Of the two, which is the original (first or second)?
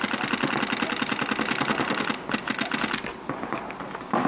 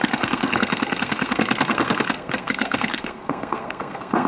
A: first